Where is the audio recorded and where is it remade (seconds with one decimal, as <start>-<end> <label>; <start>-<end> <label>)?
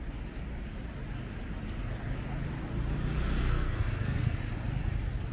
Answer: 0.0-3.4 recorded; 3.4-4.4 remade; 4.4-5.3 recorded